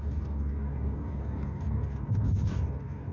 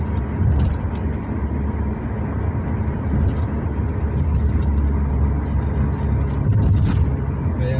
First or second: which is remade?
first